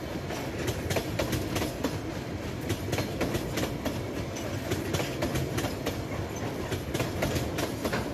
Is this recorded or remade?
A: recorded